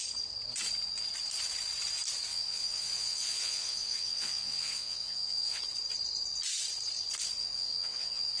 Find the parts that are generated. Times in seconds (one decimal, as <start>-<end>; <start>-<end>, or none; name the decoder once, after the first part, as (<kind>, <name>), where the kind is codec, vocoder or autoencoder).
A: 2.3-5.6 (vocoder, Vocos); 7.4-8.4